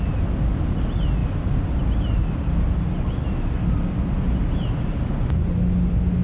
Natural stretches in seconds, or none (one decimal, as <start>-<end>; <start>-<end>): 0.0-6.2